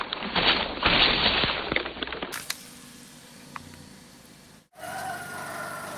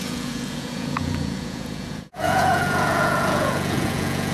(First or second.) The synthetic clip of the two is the second